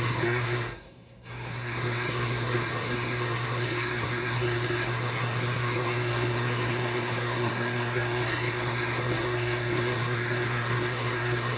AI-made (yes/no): yes